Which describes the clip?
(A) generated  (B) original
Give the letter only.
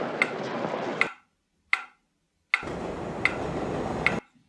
B